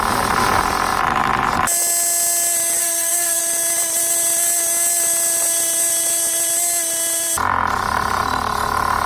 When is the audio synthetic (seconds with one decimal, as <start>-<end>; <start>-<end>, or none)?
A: 2.8-3.4